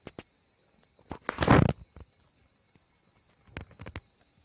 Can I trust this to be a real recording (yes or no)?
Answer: yes